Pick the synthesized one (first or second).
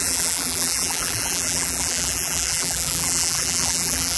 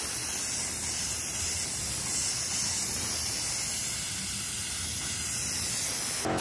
first